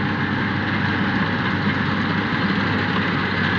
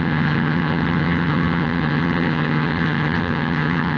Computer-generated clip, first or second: second